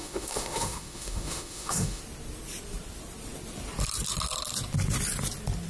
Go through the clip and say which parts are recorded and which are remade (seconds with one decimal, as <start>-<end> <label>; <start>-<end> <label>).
0.0-2.0 remade; 2.0-5.7 recorded